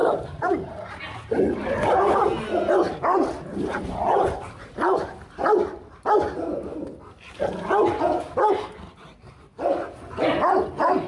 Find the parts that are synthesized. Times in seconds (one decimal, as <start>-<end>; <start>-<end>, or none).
0.0-0.7; 3.5-7.4